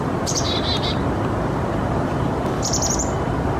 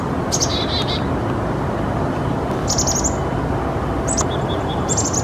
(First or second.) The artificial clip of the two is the first